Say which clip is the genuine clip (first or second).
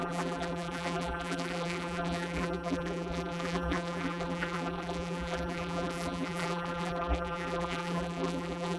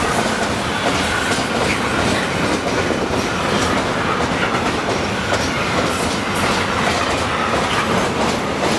second